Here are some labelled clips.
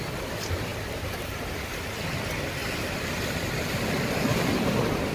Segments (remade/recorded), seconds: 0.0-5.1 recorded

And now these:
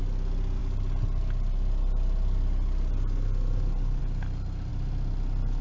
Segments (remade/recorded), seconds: 0.0-5.6 recorded